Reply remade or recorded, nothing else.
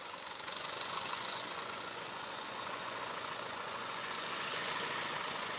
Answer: remade